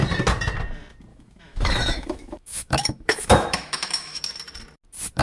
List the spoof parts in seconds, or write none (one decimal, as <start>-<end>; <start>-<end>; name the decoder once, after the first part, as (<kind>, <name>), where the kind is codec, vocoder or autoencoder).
1.1-4.2 (autoencoder, DAC-VAE)